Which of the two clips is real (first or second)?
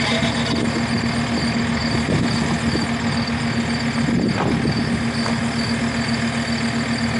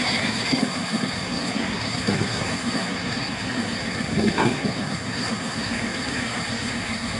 first